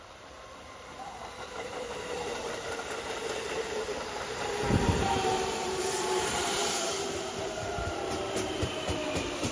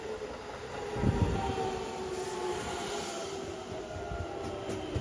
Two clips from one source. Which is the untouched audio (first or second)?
second